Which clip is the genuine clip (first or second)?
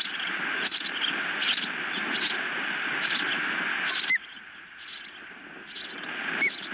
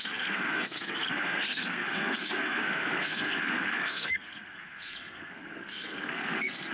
first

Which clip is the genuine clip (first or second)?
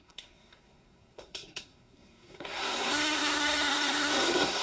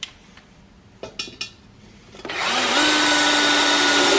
second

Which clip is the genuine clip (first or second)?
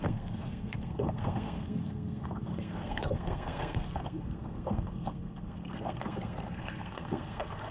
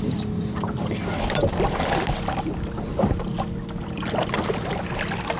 second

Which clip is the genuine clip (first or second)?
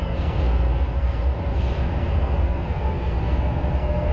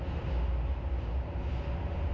second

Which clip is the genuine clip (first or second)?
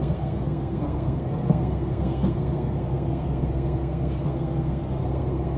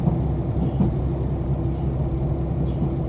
second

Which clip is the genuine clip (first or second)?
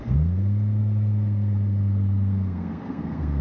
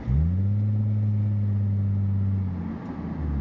second